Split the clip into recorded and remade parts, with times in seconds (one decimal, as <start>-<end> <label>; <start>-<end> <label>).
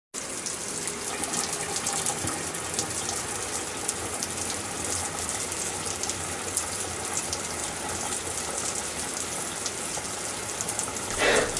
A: 0.0-11.6 recorded